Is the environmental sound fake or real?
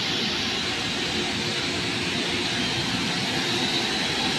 real